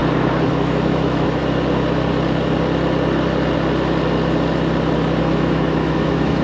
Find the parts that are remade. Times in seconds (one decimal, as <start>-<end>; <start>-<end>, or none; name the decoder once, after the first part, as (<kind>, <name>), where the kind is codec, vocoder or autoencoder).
0.5-1.4 (autoencoder, DAC-VAE); 5.2-6.4